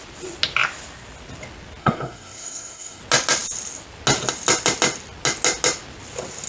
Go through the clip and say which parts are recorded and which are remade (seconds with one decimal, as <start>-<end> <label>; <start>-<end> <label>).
0.0-1.8 recorded; 1.8-3.0 remade; 3.0-6.5 recorded

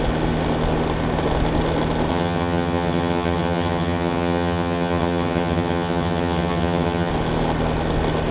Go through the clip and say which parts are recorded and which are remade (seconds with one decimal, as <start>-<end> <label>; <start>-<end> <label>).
0.0-2.1 recorded; 2.1-7.1 remade; 7.1-8.3 recorded

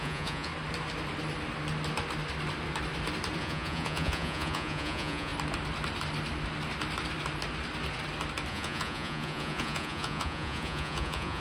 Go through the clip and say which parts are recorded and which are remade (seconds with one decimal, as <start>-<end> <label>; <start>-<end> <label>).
0.0-0.5 remade; 0.5-3.4 recorded; 3.4-5.3 remade; 5.3-8.5 recorded; 8.5-11.4 remade

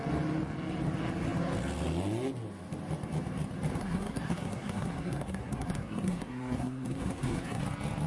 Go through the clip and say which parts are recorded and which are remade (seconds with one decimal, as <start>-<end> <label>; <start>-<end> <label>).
0.0-3.8 recorded; 3.8-7.6 remade; 7.6-8.1 recorded

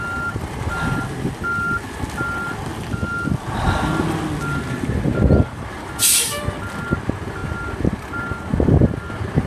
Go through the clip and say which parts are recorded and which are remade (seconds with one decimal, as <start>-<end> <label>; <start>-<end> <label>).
0.0-9.5 recorded

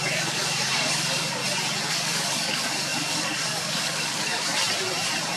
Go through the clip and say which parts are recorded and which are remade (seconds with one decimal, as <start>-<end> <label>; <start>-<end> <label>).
0.0-1.4 remade; 1.4-1.9 recorded; 1.9-4.5 remade; 4.5-5.4 recorded

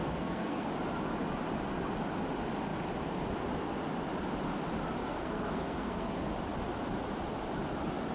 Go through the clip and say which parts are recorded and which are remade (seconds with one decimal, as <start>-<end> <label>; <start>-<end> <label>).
0.0-0.7 remade; 0.7-5.0 recorded; 5.0-6.1 remade; 6.1-8.1 recorded